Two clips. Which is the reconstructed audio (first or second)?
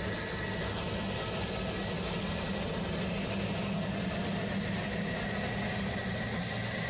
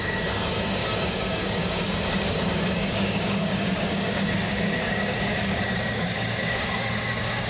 second